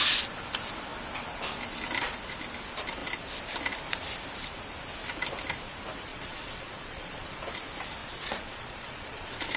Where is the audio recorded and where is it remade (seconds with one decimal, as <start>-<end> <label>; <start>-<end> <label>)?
0.0-6.1 recorded; 6.1-7.4 remade; 7.4-8.0 recorded; 8.0-9.6 remade